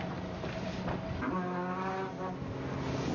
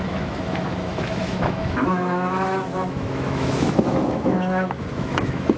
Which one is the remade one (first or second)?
second